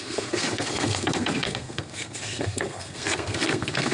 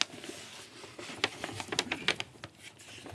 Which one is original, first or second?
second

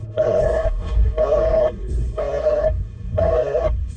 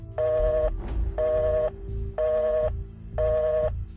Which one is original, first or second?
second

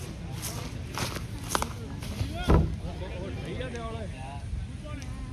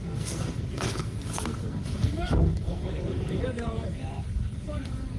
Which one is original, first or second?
first